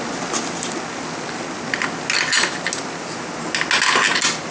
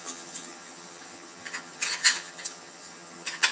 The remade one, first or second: second